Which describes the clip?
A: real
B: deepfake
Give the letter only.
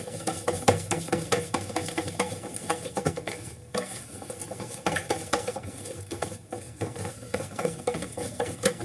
B